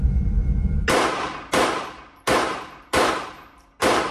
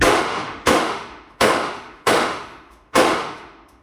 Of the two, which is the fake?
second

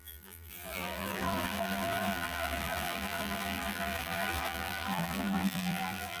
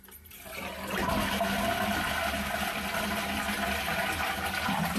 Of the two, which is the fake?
first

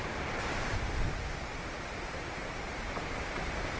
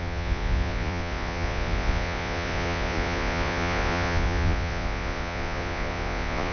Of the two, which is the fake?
second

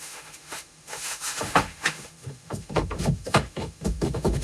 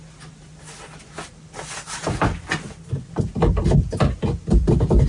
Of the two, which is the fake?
first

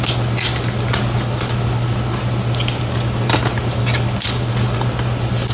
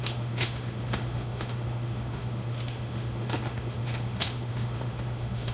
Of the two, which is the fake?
second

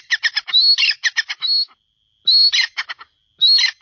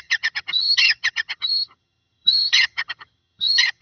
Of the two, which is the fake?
second